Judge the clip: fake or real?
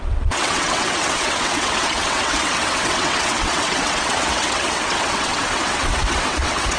fake